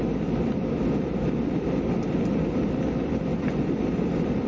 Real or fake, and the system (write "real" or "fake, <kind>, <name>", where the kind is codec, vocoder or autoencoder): real